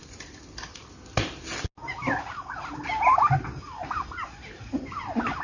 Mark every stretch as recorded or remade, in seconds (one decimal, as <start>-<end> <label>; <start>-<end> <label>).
0.0-5.4 recorded